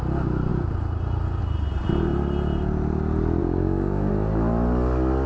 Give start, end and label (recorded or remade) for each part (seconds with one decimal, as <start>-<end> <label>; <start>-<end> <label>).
0.0-3.4 recorded; 3.4-4.1 remade; 4.1-5.3 recorded

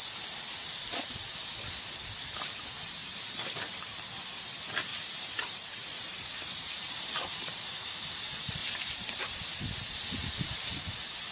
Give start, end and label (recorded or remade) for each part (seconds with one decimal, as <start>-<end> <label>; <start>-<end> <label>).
0.0-3.0 recorded; 3.0-3.9 remade; 3.9-4.9 recorded; 4.9-7.9 remade; 7.9-8.6 recorded; 8.6-9.3 remade; 9.3-11.3 recorded

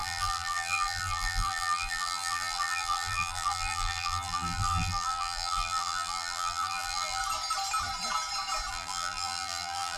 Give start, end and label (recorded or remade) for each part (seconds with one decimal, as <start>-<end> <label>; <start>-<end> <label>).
0.0-7.2 remade; 7.2-8.7 recorded; 8.7-10.0 remade

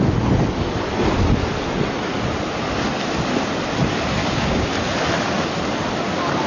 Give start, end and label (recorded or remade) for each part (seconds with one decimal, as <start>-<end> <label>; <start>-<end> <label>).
0.0-4.2 recorded; 4.2-4.7 remade; 4.7-6.5 recorded

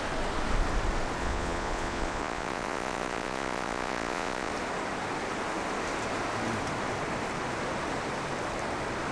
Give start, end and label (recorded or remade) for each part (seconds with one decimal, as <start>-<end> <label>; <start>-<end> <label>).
0.0-1.2 recorded; 1.2-4.5 remade; 4.5-9.1 recorded

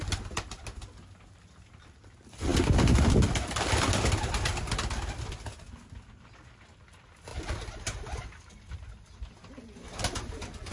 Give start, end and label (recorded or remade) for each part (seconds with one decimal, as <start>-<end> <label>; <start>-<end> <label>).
0.0-10.7 recorded

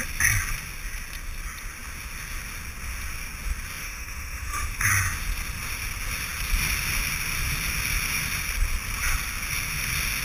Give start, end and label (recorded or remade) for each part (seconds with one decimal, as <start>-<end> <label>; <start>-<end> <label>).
0.0-3.8 recorded; 3.8-4.9 remade; 4.9-10.2 recorded

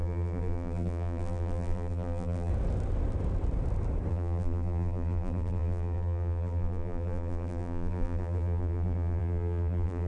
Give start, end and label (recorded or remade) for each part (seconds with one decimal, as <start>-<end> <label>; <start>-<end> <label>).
0.0-2.5 remade; 2.5-4.1 recorded; 4.1-10.1 remade